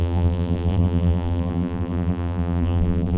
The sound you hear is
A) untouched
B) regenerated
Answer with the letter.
B